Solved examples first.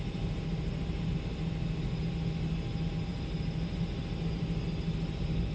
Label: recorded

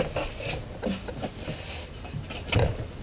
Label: recorded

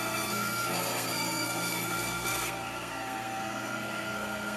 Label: remade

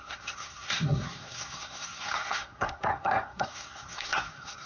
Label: remade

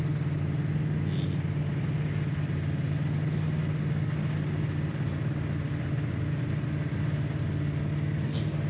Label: recorded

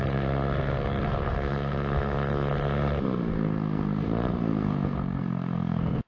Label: remade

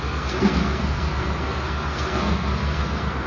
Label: remade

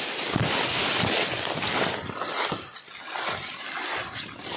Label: recorded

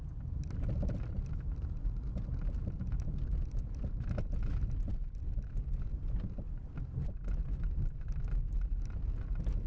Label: recorded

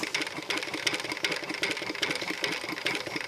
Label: recorded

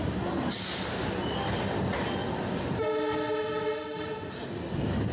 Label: recorded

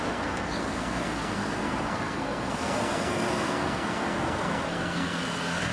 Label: remade